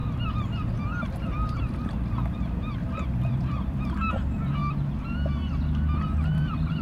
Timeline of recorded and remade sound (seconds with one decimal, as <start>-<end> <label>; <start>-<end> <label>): 0.0-4.6 remade; 4.6-6.3 recorded; 6.3-6.8 remade